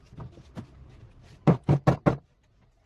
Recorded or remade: recorded